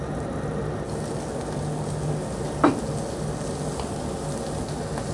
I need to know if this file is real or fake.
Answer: real